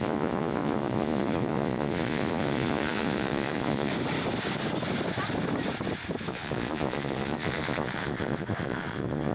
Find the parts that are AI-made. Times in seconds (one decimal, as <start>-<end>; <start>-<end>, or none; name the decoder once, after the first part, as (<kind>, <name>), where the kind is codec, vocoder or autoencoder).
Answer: 0.0-3.9 (vocoder, Vocos); 6.3-9.3